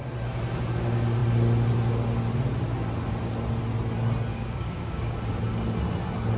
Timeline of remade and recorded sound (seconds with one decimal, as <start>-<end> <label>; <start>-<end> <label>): 0.0-4.3 recorded; 4.3-5.2 remade; 5.2-6.4 recorded